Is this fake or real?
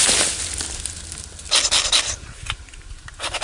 real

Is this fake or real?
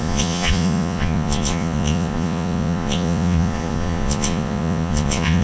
fake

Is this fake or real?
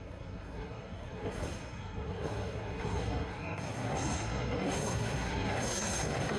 fake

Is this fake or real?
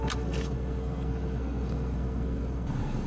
fake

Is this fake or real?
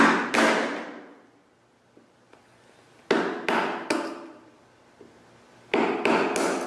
real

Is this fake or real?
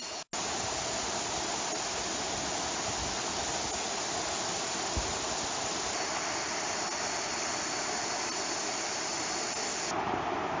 real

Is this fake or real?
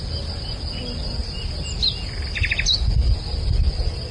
real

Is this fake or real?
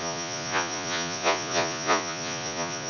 fake